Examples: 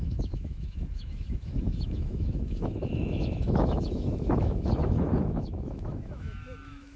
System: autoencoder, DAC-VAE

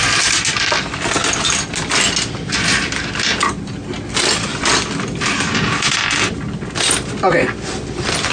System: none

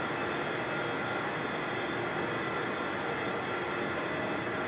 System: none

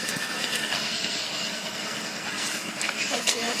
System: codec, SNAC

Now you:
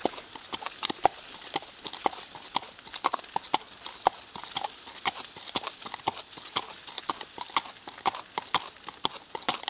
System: none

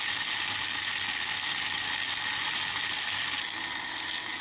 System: none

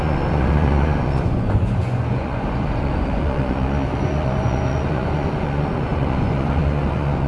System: vocoder, Vocos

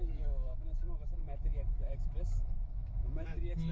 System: autoencoder, DAC-VAE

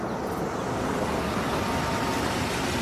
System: none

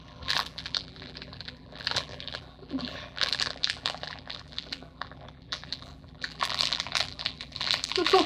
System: vocoder, BigVGAN v2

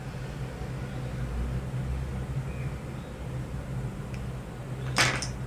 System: none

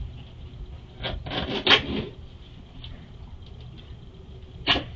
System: none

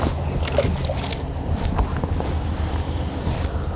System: none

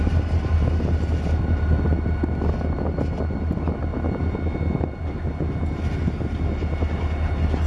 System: none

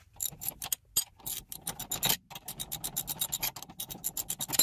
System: none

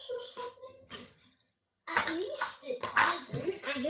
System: vocoder, HiFi-GAN